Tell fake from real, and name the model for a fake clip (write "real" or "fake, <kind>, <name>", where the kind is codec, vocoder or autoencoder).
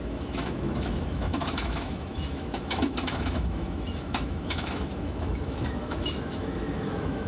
fake, autoencoder, DAC-VAE